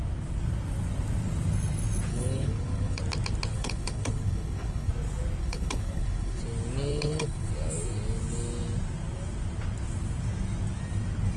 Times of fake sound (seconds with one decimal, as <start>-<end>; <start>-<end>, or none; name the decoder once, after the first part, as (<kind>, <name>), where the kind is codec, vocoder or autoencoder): 2.1-3.0 (codec, HILCodec); 3.5-4.9; 5.4-6.4; 6.9-7.5